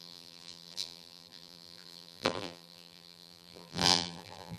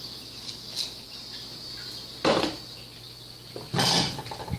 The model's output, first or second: first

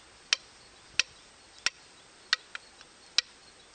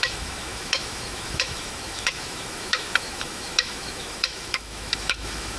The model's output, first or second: second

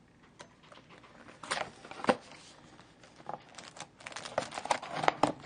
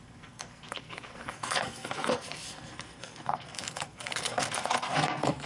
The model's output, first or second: second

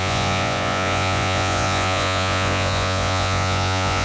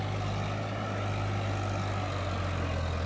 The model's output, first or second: first